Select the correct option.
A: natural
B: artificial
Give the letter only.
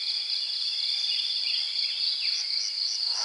A